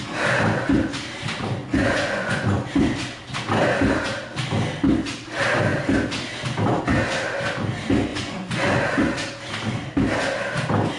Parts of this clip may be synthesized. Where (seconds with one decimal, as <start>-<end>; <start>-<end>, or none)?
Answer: 1.6-2.7; 8.1-9.0